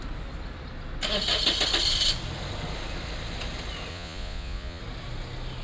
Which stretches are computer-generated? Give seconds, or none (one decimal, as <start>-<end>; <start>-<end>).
3.9-4.8